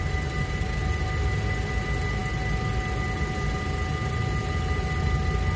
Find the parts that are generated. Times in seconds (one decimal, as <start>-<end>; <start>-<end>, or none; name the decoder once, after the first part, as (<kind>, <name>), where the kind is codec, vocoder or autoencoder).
none